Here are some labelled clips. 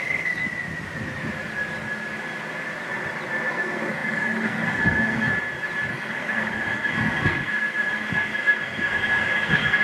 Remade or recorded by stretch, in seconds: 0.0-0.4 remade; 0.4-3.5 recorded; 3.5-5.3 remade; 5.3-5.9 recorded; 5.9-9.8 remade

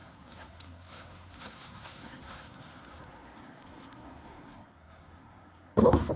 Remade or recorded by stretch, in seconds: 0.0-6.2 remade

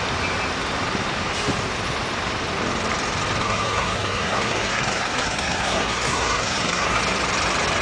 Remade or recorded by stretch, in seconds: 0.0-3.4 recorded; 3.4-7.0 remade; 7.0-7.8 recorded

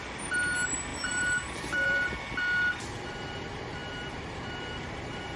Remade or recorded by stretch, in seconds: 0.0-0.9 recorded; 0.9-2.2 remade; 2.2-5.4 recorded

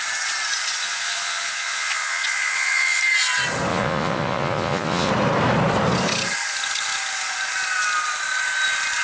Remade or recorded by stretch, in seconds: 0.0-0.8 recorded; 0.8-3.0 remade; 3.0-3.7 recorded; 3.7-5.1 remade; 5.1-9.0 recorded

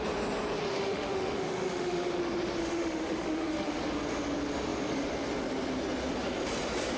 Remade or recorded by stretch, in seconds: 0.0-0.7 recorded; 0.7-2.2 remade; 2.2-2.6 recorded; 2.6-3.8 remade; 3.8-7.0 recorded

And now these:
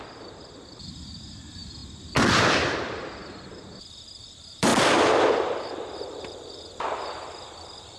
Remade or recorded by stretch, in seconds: 0.0-1.8 remade; 1.8-2.7 recorded; 2.7-4.7 remade; 4.7-5.3 recorded; 5.3-8.0 remade